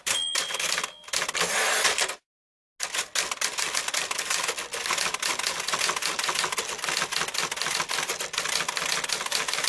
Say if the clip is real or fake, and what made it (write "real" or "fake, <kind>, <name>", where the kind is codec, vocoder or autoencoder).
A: real